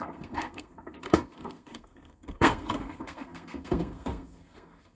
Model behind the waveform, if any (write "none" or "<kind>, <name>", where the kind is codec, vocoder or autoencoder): codec, SNAC